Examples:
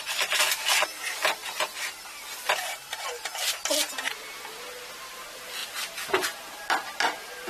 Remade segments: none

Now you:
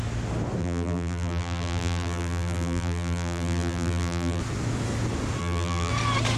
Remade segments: 0.6-4.4 (vocoder, BigVGAN v2); 5.4-5.9

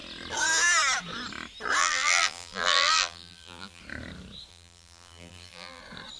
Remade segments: 1.8-3.8 (vocoder, BigVGAN v2); 4.5-5.8

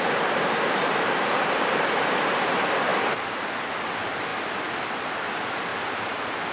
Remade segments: 0.0-2.9 (vocoder, BigVGAN v2); 3.8-4.3; 5.0-5.7